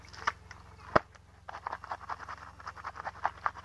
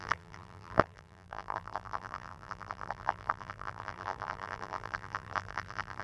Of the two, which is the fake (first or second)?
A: second